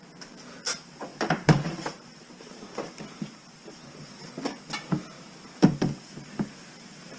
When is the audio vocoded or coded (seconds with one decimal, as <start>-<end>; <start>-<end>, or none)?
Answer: none